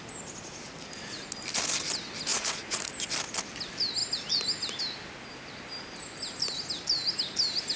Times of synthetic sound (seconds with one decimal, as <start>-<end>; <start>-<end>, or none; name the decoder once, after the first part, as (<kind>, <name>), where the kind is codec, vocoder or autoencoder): 2.3-2.9 (vocoder, Vocos)